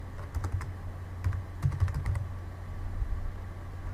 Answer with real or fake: real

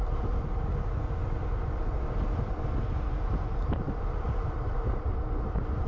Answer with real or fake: real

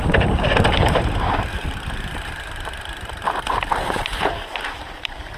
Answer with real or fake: fake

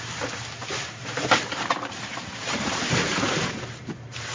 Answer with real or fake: fake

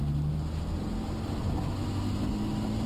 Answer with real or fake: real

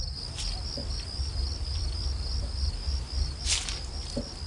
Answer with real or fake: real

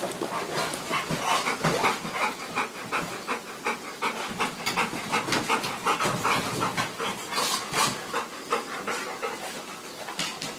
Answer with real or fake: real